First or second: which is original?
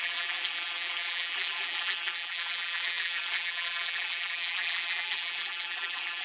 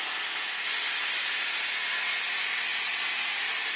second